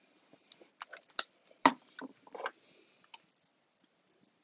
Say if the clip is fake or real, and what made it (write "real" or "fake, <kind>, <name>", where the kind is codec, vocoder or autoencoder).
real